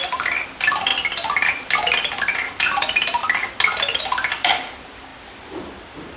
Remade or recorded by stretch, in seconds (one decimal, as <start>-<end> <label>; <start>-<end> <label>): 0.0-3.2 remade; 3.2-4.0 recorded; 4.0-6.2 remade